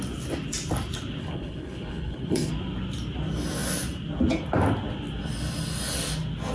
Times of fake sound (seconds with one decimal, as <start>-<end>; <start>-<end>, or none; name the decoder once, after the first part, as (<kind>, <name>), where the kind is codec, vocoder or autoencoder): 1.2-2.5 (codec, HILCodec)